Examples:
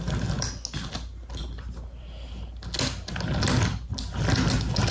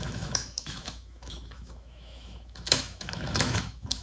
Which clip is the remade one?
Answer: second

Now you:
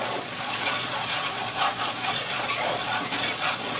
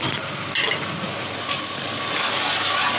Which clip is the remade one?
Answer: first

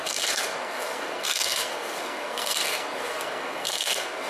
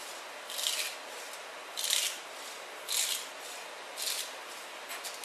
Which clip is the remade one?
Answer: first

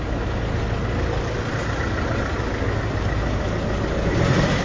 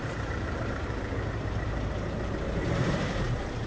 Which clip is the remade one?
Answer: second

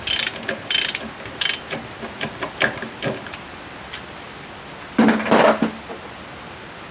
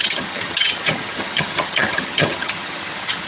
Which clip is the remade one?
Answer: second